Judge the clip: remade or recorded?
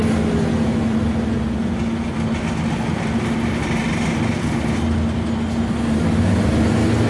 recorded